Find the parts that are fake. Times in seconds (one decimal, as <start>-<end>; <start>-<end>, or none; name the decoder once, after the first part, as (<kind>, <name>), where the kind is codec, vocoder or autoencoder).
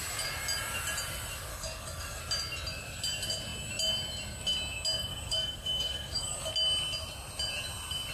1.5-2.2 (codec, DAC); 5.1-6.5